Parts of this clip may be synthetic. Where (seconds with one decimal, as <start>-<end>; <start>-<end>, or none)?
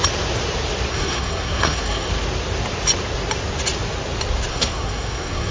0.9-2.1; 4.5-5.5